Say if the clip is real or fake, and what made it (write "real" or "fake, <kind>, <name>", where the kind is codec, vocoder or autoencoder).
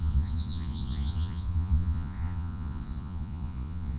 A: fake, vocoder, Vocos